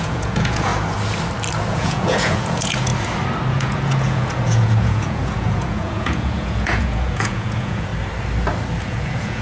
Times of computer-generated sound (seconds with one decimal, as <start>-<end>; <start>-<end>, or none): 0.0-0.7; 1.7-2.9; 3.5-7.9; 8.8-9.4